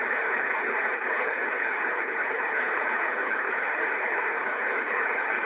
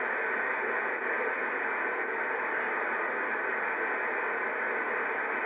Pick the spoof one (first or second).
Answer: first